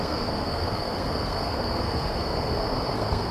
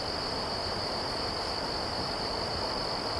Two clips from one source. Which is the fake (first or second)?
first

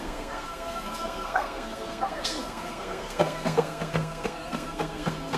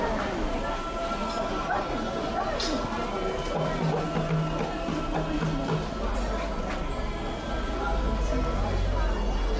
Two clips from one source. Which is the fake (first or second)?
first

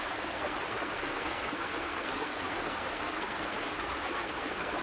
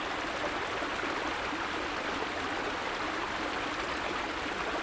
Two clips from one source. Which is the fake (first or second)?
first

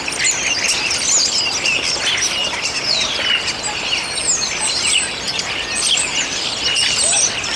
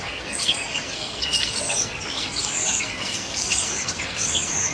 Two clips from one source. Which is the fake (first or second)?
second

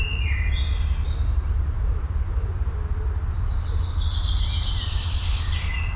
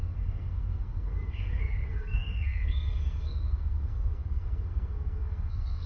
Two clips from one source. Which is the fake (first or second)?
second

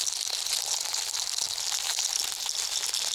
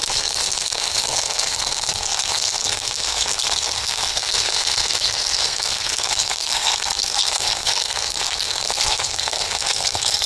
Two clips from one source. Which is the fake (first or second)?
second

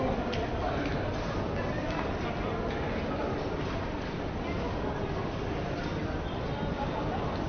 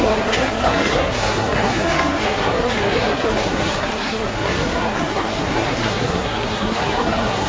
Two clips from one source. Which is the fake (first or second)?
second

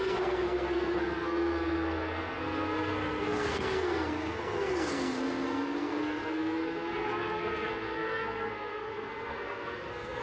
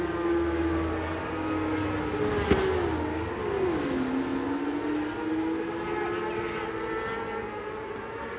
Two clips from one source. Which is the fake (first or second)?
first